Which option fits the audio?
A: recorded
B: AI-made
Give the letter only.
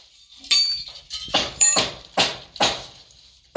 B